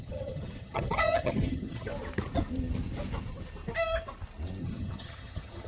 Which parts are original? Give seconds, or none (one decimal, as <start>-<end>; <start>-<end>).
1.9-4.6